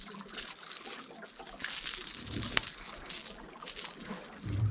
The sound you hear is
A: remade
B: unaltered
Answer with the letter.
B